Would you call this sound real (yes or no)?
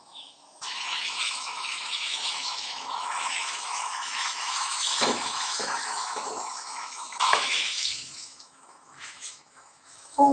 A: no